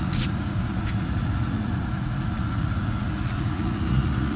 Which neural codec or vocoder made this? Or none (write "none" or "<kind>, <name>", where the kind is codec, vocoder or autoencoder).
vocoder, Vocos